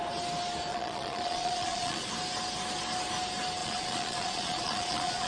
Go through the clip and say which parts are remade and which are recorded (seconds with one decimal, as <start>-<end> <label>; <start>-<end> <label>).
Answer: 0.0-0.7 recorded; 0.7-2.1 remade; 2.1-3.6 recorded; 3.6-5.3 remade